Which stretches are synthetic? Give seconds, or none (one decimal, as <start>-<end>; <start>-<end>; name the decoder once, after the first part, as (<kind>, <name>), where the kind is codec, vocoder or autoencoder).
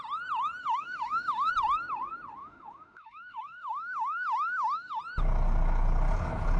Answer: 0.6-1.5 (autoencoder, DAC-VAE); 2.4-5.0